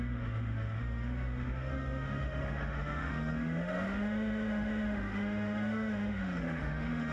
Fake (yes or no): yes